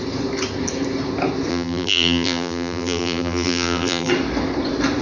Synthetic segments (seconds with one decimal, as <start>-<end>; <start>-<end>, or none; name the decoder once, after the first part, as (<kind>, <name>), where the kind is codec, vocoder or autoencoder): 1.5-4.1 (vocoder, BigVGAN v2)